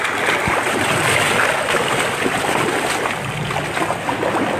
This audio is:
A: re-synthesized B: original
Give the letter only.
B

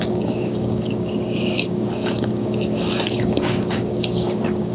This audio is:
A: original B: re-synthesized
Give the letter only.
B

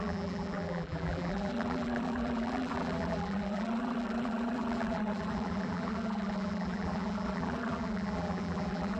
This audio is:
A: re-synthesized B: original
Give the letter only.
A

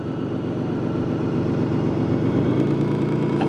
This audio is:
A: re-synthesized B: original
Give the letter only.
A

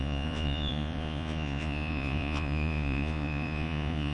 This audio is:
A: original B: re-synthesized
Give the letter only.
B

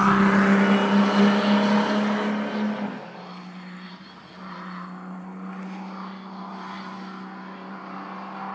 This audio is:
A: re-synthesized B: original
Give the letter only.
B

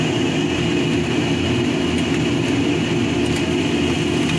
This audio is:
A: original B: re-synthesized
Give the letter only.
A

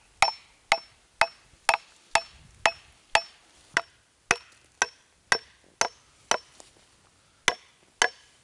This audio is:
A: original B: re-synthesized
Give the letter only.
A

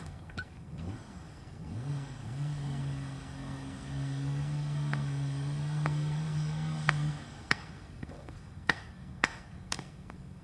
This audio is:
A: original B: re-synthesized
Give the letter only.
B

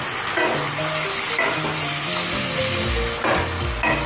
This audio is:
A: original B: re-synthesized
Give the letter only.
A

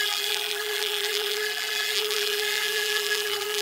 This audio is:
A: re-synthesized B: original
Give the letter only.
A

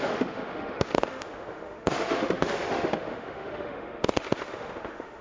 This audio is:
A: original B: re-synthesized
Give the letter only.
B